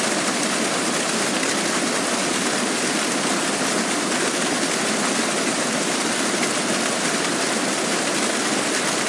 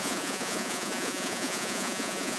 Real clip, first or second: first